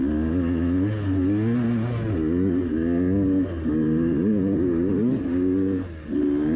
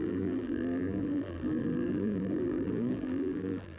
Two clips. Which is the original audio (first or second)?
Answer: first